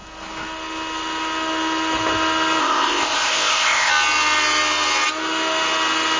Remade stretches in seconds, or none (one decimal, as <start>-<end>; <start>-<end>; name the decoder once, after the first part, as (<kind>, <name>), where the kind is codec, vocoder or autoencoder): 2.6-3.9 (codec, ZipCodec)